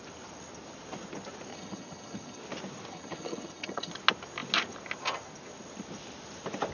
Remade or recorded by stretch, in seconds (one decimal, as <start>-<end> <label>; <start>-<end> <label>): 0.0-1.5 recorded; 1.5-2.4 remade; 2.4-2.9 recorded; 2.9-3.9 remade; 3.9-6.7 recorded